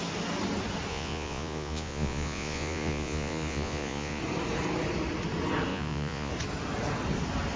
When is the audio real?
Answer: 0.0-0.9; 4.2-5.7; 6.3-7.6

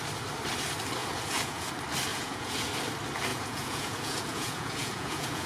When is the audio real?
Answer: 0.0-1.0; 1.7-2.1; 2.7-3.3

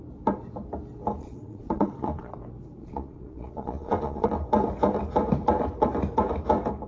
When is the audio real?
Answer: 0.0-1.2; 2.3-2.8; 4.3-6.9

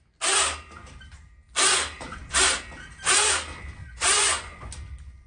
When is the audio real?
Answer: 0.0-3.8; 4.7-5.3

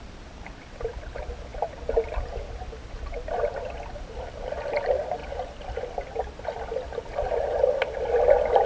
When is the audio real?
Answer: 0.0-8.7

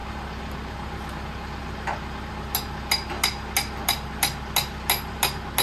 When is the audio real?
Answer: 0.0-5.6

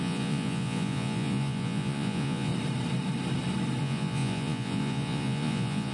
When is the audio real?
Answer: 2.5-3.8